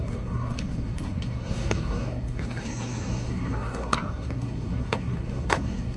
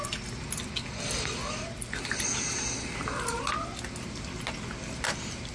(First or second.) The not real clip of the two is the first